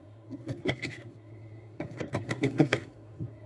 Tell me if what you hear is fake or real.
fake